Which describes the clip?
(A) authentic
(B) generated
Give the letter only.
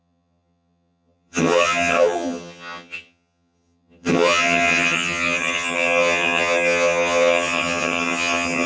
B